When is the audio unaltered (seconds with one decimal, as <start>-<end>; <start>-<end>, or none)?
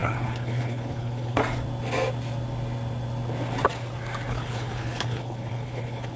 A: 1.4-4.3